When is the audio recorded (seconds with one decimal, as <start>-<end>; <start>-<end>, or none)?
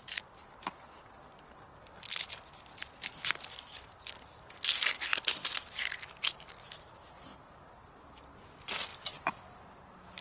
0.0-10.2